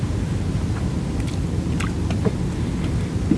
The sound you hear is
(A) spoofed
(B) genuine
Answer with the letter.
B